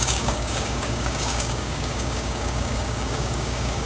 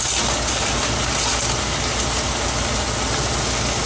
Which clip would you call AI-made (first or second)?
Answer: first